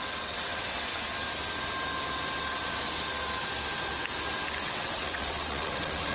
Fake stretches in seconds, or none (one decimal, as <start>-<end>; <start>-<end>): 0.0-0.9; 4.6-6.1